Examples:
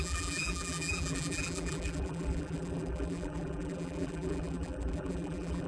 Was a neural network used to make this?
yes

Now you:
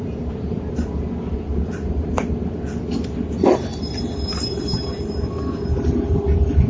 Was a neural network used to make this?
yes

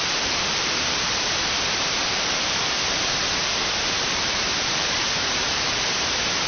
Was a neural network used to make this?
yes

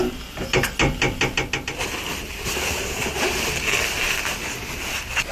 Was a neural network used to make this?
no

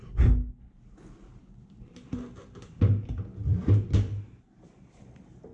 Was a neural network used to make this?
no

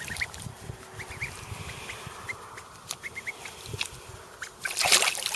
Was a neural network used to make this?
no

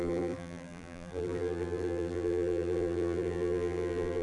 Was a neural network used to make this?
yes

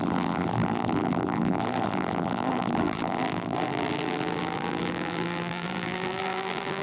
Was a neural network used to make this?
yes